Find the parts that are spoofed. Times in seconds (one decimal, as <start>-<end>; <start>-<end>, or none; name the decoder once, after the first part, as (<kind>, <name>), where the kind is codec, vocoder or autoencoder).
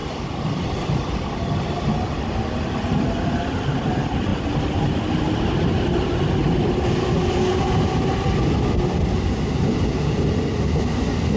0.0-1.9 (vocoder, BigVGAN v2)